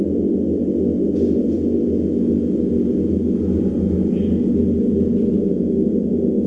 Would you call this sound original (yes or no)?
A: yes